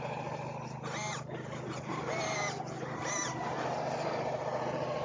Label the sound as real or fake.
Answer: real